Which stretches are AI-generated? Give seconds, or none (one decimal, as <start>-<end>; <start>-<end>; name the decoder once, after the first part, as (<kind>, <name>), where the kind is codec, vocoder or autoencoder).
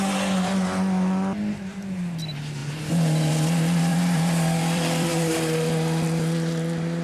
3.9-5.3 (vocoder, BigVGAN v2)